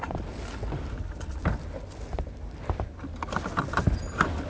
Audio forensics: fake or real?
real